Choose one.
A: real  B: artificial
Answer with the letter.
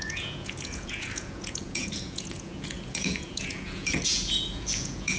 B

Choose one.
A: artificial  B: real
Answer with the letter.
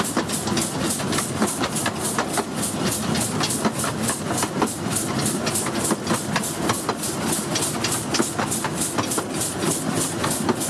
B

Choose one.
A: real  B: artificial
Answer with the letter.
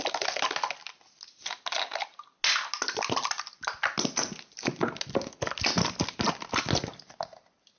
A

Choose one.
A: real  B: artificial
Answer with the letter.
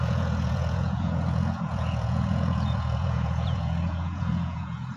B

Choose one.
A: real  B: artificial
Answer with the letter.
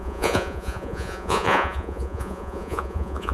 B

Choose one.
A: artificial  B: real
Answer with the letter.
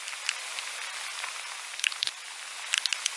B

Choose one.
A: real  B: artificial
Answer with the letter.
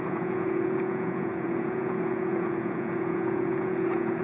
B